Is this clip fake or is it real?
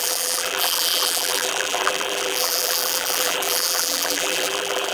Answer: fake